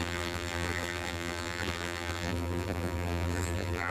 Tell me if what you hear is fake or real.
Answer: fake